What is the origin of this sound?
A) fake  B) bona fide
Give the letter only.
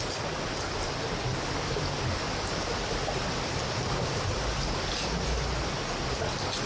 B